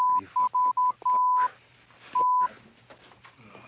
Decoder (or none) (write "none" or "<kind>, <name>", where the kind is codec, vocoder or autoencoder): none